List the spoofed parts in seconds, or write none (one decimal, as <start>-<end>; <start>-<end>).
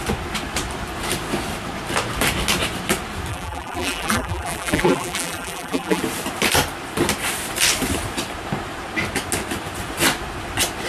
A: 3.3-6.0